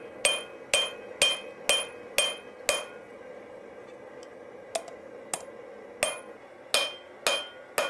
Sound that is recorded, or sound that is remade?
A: recorded